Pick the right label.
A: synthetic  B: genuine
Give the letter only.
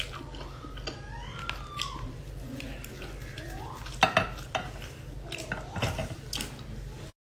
B